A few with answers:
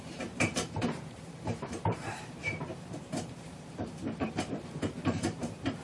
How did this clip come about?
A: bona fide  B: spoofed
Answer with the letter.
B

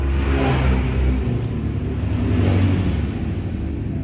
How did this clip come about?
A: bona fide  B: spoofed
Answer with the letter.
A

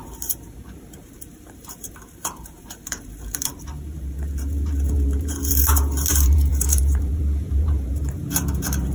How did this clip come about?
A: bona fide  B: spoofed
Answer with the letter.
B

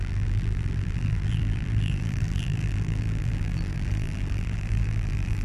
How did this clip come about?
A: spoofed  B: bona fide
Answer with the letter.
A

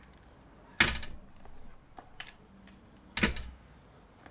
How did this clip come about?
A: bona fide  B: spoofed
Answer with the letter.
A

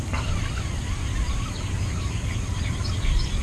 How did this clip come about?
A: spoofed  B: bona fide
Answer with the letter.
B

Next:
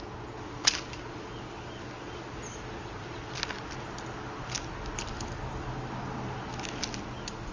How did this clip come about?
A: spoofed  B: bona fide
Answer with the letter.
B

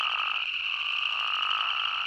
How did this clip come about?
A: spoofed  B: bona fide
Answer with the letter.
B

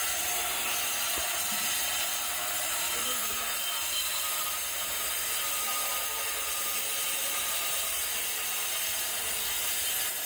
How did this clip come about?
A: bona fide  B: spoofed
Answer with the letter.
B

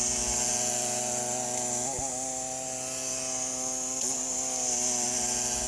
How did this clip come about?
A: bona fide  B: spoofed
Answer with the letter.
A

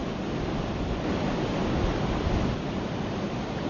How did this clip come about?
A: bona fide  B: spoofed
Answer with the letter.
A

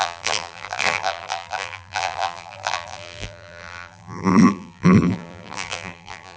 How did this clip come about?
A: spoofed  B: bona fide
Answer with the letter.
A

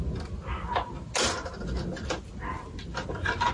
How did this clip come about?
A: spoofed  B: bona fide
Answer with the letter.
B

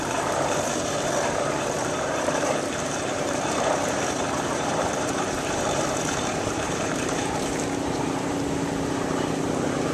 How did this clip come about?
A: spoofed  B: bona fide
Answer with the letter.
A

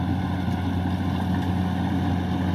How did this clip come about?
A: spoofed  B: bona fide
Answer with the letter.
B